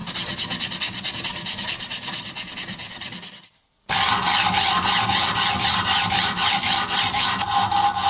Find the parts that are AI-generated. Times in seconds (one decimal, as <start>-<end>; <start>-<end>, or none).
none

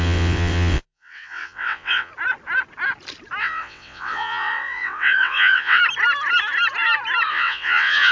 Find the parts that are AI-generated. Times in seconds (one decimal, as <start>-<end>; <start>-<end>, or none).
0.0-2.1; 3.4-5.8; 7.3-8.1